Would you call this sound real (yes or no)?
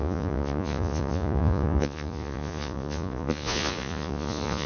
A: no